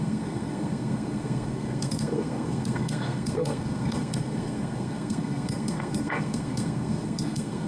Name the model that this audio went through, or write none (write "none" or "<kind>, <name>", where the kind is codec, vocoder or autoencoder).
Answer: codec, SNAC